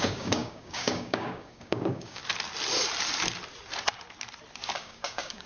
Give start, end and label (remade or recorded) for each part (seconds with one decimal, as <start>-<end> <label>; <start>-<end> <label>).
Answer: 0.0-2.2 remade; 2.2-4.7 recorded; 4.7-5.5 remade